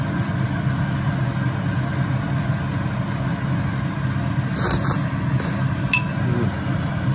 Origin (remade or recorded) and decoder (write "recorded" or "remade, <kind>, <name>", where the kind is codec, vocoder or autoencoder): recorded